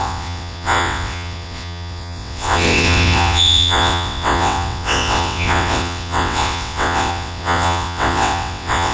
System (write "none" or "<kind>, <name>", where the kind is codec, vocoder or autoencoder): vocoder, WaveNeXt